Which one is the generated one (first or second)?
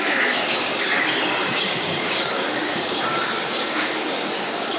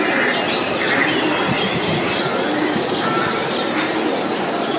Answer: first